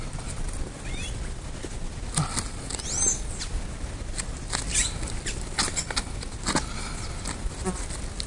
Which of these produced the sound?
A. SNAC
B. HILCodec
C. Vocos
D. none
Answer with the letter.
D